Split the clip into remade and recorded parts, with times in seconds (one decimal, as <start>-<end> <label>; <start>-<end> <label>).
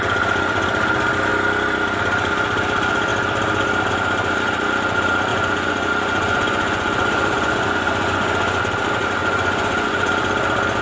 0.0-5.3 recorded; 5.3-8.6 remade; 8.6-9.2 recorded; 9.2-10.1 remade; 10.1-10.8 recorded